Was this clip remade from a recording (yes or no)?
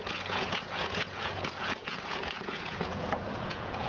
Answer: yes